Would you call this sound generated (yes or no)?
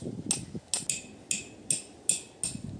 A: no